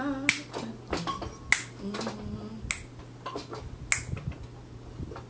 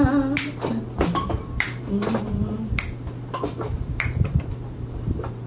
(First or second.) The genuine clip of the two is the first